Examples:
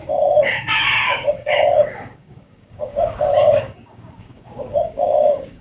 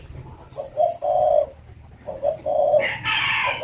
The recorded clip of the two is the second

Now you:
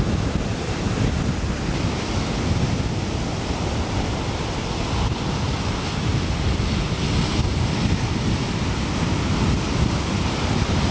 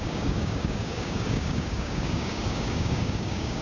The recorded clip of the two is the first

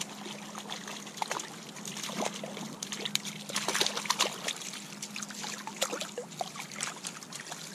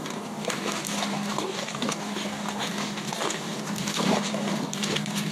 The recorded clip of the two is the first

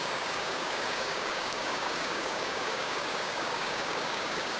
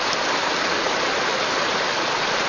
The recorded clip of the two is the second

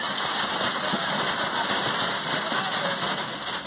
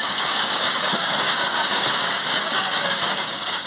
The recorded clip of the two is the first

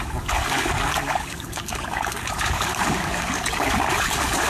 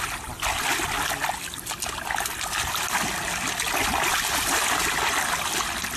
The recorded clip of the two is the second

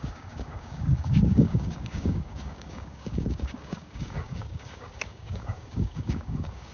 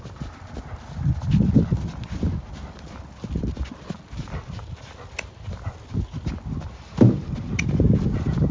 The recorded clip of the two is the second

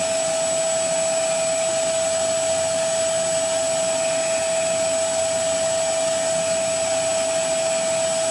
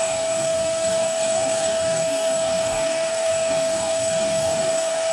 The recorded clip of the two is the first